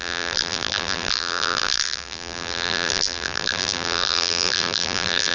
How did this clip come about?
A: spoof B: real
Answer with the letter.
A